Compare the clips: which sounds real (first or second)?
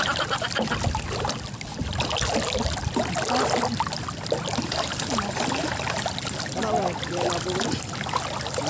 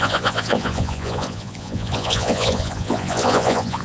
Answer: first